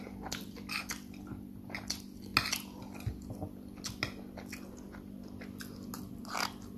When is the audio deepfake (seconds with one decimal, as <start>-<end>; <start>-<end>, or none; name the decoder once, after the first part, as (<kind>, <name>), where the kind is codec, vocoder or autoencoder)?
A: none